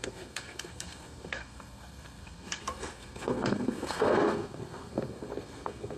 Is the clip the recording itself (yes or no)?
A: no